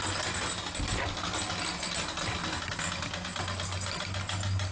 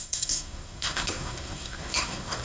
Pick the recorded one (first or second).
first